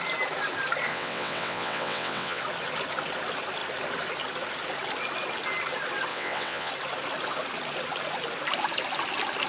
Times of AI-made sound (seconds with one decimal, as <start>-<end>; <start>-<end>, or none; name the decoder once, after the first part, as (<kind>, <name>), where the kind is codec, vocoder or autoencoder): 0.9-2.4 (vocoder, WaveNeXt); 6.1-6.7